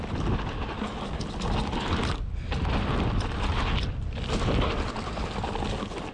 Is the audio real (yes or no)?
yes